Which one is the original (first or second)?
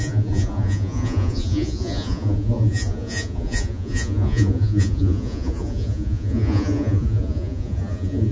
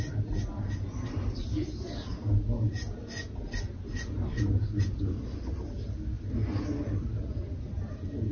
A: second